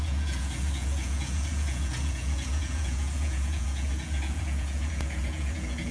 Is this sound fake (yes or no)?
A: yes